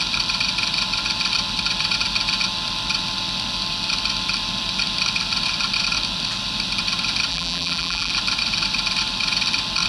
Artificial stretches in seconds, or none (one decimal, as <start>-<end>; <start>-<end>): 7.3-8.1